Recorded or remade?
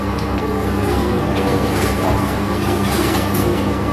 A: remade